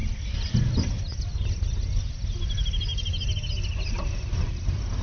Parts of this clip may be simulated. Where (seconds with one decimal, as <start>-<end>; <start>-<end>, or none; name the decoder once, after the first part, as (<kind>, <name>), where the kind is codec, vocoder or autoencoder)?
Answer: none